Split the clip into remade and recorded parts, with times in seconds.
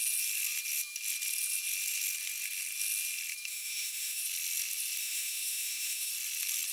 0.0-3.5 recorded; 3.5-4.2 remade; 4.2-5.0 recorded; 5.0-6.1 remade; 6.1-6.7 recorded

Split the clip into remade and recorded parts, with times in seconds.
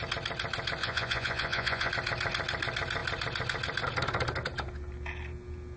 0.0-0.8 recorded; 0.8-1.9 remade; 1.9-5.8 recorded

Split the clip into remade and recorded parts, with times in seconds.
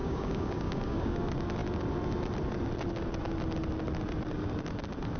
0.0-1.2 remade; 1.2-5.2 recorded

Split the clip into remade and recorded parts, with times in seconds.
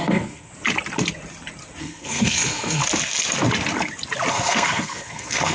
0.0-0.5 remade; 0.5-1.8 recorded; 1.8-2.8 remade; 2.8-4.3 recorded; 4.3-5.5 remade